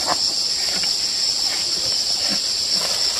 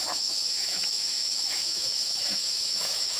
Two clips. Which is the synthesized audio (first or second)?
second